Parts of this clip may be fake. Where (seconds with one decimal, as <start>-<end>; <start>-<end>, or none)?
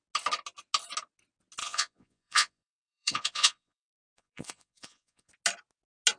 1.6-5.3